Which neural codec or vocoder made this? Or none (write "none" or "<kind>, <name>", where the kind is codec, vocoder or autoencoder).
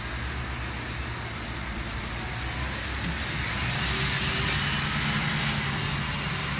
none